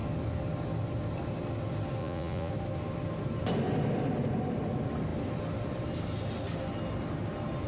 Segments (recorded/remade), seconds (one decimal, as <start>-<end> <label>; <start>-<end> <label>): 0.0-2.0 recorded; 2.0-2.5 remade; 2.5-7.7 recorded